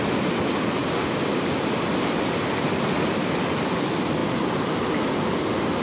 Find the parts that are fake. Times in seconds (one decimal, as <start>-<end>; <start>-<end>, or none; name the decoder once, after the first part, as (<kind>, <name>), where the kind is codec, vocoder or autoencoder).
0.8-1.4 (codec, DAC)